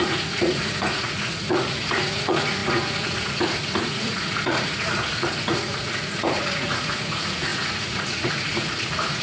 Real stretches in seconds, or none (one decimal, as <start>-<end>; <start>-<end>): none